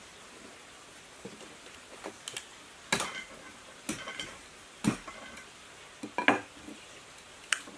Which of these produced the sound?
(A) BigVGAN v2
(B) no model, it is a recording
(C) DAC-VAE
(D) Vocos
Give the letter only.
B